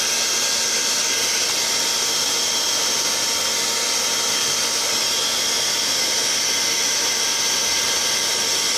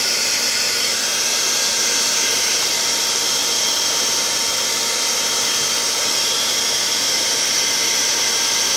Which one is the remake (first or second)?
second